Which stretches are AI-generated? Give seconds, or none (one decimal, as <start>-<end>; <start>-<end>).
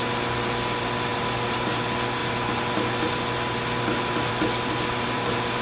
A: none